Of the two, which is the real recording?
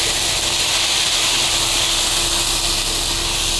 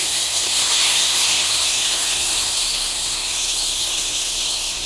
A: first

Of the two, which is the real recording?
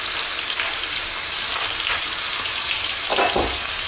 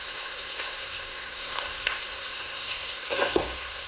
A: first